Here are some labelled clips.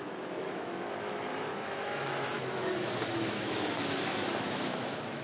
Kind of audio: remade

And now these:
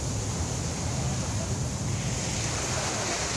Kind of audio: recorded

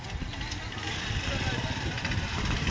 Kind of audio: recorded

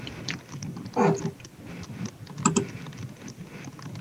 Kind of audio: recorded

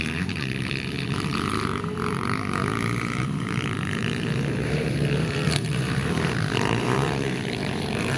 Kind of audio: remade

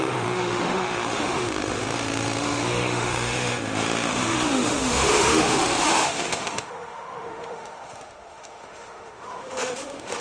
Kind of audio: remade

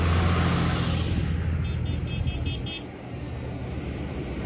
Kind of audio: recorded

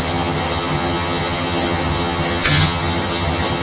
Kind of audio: remade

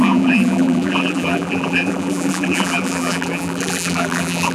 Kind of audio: remade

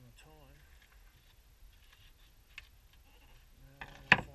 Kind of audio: recorded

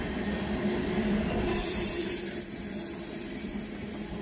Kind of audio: remade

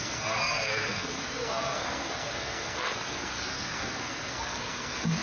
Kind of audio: remade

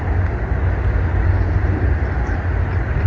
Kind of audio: recorded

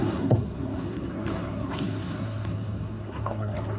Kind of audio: remade